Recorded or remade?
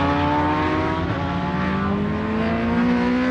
recorded